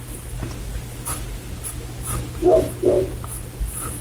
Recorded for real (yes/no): yes